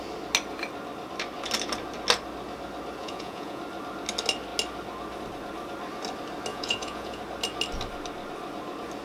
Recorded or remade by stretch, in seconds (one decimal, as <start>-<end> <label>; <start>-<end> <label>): 0.0-3.0 recorded; 3.0-3.6 remade; 3.6-6.5 recorded; 6.5-7.2 remade; 7.2-9.0 recorded